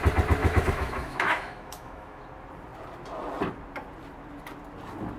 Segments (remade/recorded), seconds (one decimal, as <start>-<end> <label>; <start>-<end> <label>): 0.0-0.4 recorded; 0.4-2.2 remade; 2.2-5.2 recorded